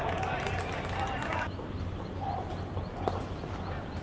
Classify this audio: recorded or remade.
recorded